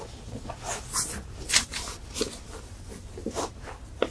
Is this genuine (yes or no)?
yes